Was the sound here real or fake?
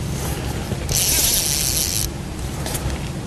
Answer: real